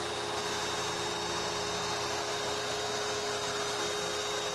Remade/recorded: recorded